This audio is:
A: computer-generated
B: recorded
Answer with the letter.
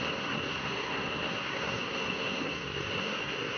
A